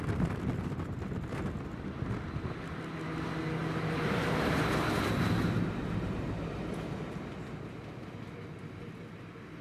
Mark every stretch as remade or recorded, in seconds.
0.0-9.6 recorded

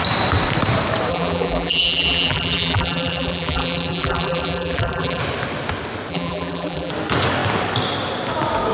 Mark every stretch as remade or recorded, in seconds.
0.0-1.1 recorded; 1.1-5.2 remade; 5.2-6.1 recorded; 6.1-6.9 remade; 6.9-8.7 recorded

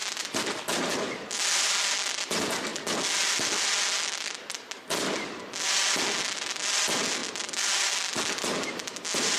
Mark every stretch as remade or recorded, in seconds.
0.0-9.4 recorded

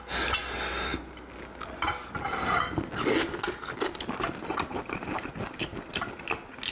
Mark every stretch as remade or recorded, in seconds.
0.0-6.7 recorded

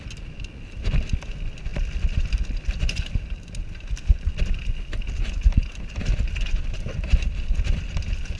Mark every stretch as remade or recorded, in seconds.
0.0-8.4 recorded

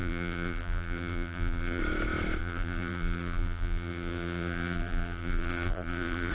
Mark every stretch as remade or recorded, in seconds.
0.0-1.8 remade; 1.8-2.4 recorded; 2.4-6.3 remade